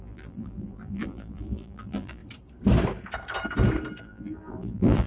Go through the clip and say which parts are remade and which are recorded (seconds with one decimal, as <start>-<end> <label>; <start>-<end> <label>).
0.0-2.2 remade; 2.2-4.0 recorded; 4.0-5.1 remade